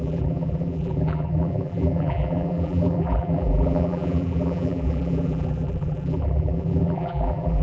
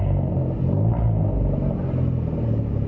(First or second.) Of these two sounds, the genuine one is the second